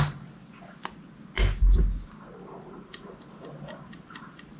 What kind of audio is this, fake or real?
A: real